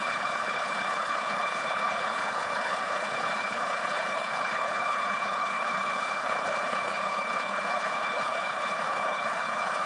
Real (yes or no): no